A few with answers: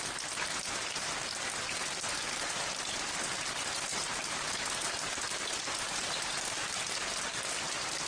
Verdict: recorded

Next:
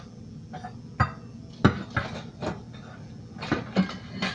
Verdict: recorded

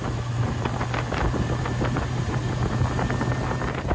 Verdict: recorded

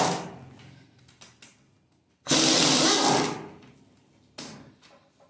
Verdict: recorded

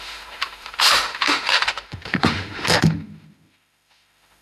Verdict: remade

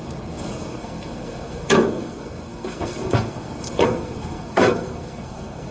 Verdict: remade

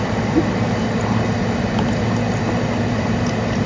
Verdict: recorded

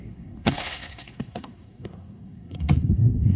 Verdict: remade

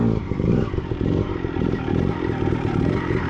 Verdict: remade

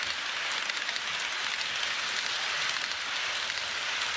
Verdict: recorded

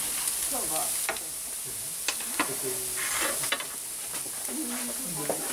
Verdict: recorded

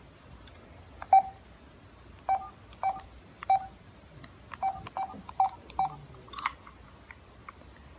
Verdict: recorded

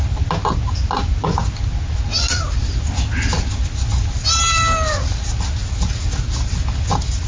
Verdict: recorded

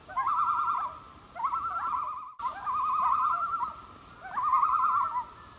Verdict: recorded